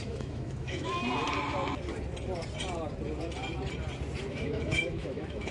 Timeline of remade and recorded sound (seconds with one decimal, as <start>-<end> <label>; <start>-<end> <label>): 0.0-1.0 remade; 1.0-4.3 recorded; 4.3-5.5 remade